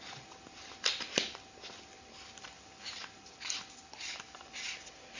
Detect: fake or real real